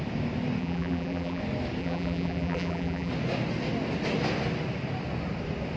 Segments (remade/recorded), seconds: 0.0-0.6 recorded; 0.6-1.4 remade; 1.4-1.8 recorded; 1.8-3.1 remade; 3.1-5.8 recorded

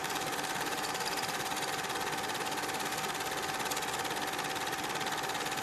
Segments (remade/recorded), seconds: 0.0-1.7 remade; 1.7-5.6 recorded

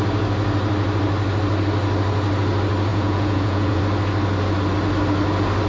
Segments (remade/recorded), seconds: 0.0-2.9 recorded; 2.9-3.8 remade; 3.8-5.7 recorded

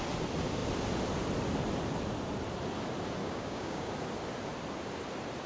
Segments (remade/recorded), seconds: 0.0-3.2 recorded; 3.2-3.9 remade; 3.9-5.5 recorded